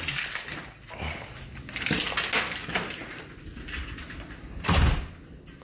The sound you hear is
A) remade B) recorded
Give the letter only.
B